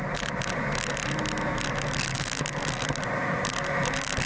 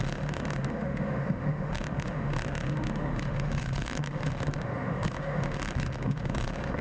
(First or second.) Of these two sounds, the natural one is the first